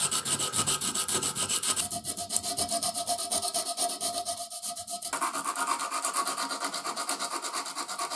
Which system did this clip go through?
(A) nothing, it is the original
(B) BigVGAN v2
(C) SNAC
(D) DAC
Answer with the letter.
A